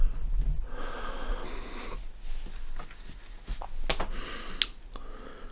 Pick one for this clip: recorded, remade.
recorded